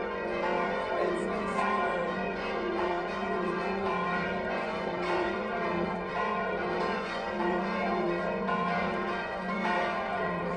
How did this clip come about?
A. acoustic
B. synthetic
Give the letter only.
B